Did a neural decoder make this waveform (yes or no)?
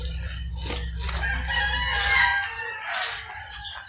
no